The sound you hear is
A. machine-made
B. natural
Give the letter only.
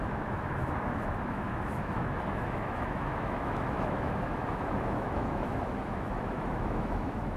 A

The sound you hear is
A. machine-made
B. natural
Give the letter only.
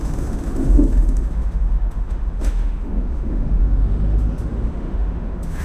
A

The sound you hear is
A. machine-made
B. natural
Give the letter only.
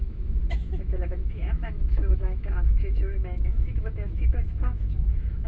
A